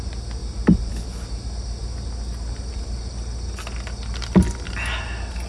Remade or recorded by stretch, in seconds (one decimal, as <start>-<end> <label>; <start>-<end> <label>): 0.0-5.5 recorded